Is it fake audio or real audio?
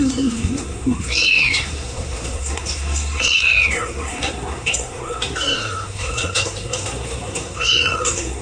fake